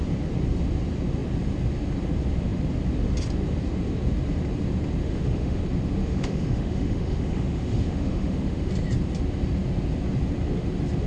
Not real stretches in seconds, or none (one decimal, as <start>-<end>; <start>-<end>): 5.0-5.6; 6.0-8.7